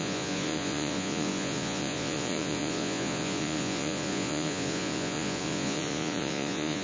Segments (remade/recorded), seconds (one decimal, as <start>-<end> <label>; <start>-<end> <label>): 0.0-6.8 remade